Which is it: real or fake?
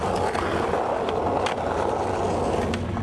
real